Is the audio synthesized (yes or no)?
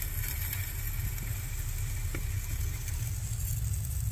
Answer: no